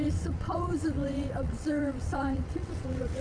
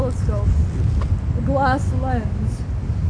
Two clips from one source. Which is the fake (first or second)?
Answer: first